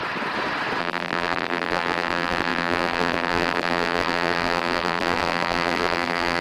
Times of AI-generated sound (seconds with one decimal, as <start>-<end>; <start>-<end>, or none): 0.8-6.4

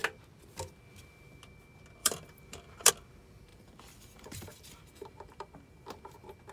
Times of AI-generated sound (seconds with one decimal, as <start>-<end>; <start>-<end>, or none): 2.0-2.9; 3.5-6.0

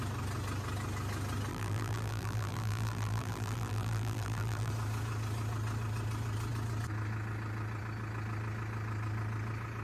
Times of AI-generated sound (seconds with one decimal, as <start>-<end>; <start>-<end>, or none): 1.5-4.7

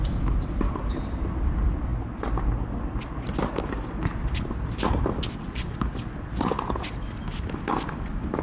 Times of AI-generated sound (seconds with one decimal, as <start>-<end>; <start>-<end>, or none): 0.0-1.9; 3.6-8.4

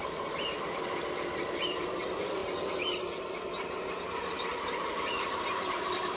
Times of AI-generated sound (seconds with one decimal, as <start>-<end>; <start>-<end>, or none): 0.0-1.8; 2.4-3.3; 4.5-5.8

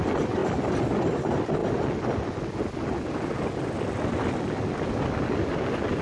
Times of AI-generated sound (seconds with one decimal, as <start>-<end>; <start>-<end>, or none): none

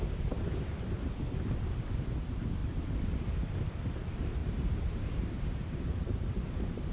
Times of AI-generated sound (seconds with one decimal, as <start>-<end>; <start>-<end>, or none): 4.4-6.4